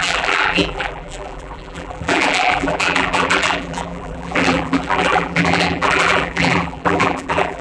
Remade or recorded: remade